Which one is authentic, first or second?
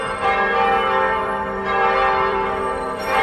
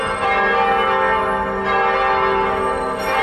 second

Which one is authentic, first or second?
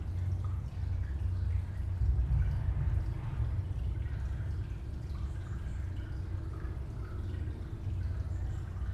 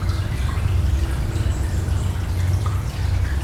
first